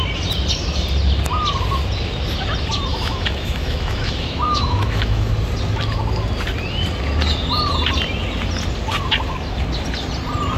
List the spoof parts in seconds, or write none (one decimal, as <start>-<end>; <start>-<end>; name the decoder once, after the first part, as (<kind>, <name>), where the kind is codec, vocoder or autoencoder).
2.9-5.3 (autoencoder, DAC-VAE)